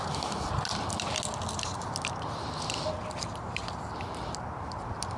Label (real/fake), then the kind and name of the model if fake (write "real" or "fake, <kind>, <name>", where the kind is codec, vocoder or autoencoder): real